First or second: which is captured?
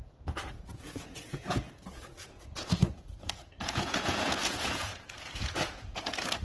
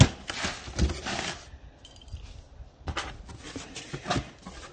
second